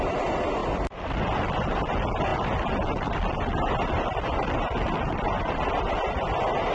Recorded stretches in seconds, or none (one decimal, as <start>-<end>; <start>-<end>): 0.0-0.6; 1.7-6.7